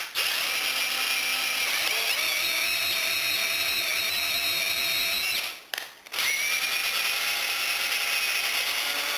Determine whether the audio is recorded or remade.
recorded